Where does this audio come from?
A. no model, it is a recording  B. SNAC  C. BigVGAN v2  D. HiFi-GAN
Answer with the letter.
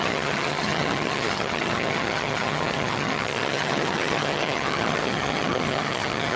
D